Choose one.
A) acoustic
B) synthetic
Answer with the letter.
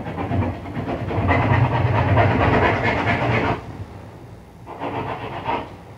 A